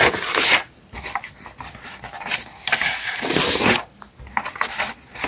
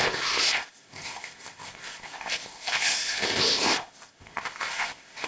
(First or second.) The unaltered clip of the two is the first